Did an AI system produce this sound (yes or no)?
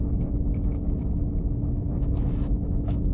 yes